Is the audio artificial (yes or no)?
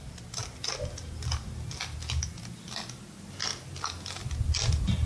no